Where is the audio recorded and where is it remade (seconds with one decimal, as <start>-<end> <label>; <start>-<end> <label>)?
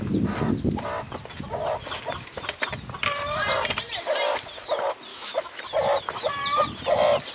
0.0-5.1 recorded; 5.1-5.6 remade; 5.6-7.3 recorded